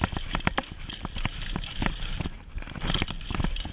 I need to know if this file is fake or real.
real